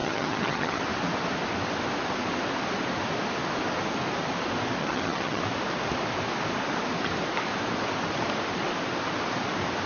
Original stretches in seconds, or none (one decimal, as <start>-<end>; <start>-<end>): 0.8-4.8; 5.4-9.9